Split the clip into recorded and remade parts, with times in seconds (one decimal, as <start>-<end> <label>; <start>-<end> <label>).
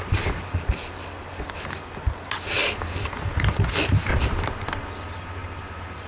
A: 0.0-4.1 recorded; 4.1-4.9 remade; 4.9-5.4 recorded; 5.4-6.1 remade